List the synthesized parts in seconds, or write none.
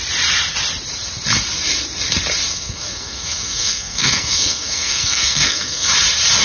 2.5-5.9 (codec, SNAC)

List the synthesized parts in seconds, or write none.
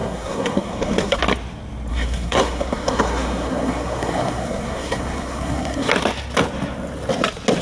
0.0-1.2 (codec, SNAC); 1.9-5.9